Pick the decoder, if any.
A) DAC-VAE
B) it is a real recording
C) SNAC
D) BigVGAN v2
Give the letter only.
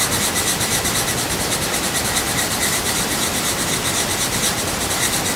B